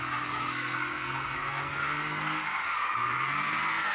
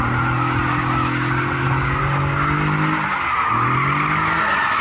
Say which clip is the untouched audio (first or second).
second